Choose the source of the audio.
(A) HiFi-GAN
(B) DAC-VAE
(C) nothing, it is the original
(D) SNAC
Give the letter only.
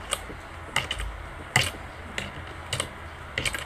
C